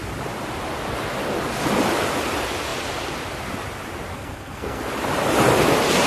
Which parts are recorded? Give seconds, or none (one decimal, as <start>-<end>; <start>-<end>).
0.0-4.1; 4.8-6.1